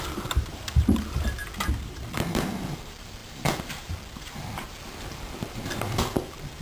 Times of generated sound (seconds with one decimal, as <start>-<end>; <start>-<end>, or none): 0.0-1.4; 1.9-6.6